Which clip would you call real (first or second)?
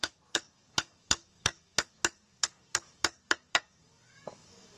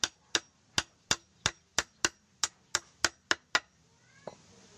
second